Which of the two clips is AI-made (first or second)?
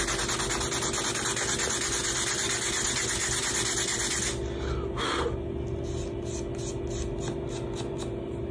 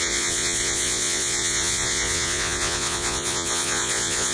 second